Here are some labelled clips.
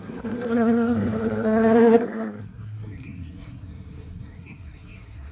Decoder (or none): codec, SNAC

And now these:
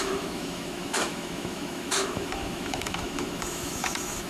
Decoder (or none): autoencoder, DAC-VAE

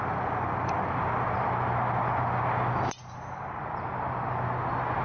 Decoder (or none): none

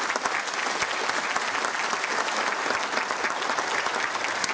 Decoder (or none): none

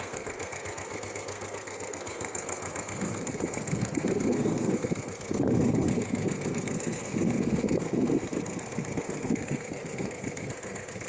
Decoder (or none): codec, SNAC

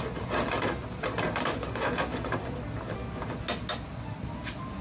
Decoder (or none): none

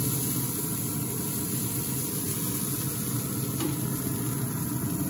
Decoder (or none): none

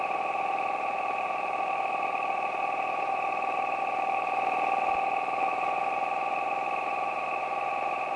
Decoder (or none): none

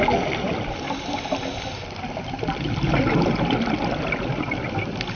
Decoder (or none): none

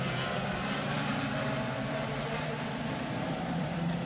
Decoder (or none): vocoder, BigVGAN v2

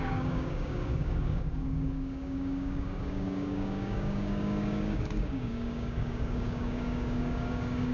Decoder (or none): codec, DAC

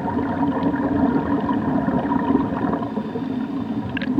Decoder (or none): none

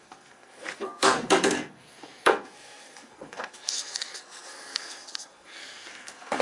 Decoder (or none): codec, SNAC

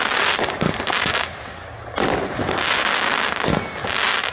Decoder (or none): none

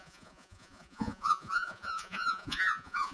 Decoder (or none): vocoder, Vocos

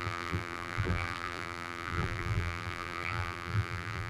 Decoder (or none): vocoder, BigVGAN v2